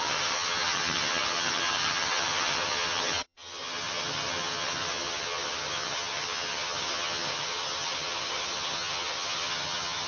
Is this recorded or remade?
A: remade